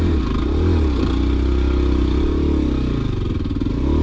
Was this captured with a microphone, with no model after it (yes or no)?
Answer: yes